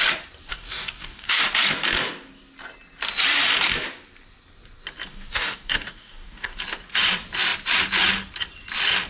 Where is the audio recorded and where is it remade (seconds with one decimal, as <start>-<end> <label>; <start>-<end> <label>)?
0.0-0.5 recorded; 0.5-1.4 remade; 1.4-5.1 recorded; 5.1-6.6 remade; 6.6-9.1 recorded